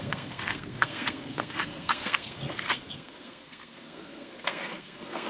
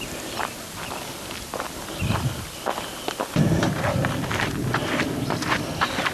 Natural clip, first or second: second